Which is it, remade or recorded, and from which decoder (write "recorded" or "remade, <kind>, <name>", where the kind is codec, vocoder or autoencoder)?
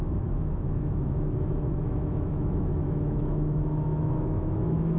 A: remade, autoencoder, DAC-VAE